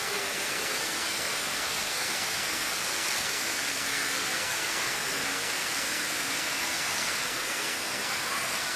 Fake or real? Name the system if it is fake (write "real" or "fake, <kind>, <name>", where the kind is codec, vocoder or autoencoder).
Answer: fake, codec, SNAC